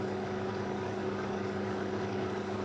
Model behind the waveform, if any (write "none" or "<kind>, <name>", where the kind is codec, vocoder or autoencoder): codec, DAC